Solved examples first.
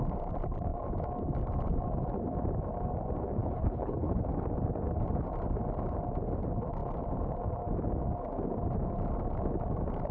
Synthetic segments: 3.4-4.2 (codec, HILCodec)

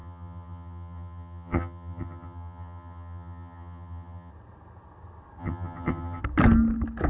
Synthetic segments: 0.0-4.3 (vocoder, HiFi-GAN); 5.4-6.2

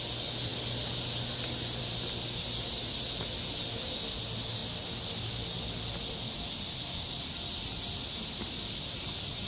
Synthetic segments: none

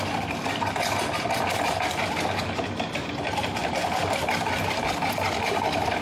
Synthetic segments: 3.6-4.7 (vocoder, BigVGAN v2)

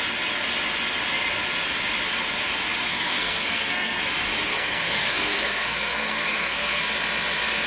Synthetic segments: 2.9-4.0 (codec, SNAC); 4.5-6.8

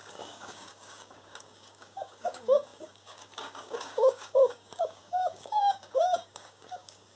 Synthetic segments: 0.0-7.2 (codec, DAC)

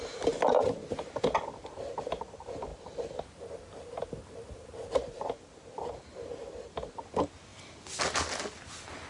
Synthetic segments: none

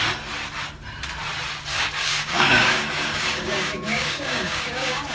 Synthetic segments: 1.7-5.1 (codec, DAC)